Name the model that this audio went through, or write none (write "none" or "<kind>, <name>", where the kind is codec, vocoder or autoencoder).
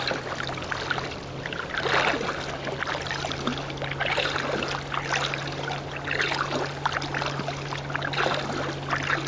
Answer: none